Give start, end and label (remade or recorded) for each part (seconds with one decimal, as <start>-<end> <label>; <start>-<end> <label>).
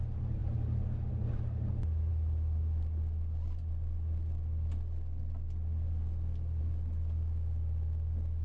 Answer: 0.0-8.4 recorded